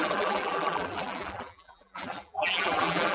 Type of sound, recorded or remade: remade